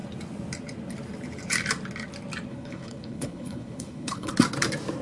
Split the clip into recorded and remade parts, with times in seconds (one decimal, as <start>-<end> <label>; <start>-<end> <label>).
0.0-2.5 recorded; 2.5-4.3 remade; 4.3-5.0 recorded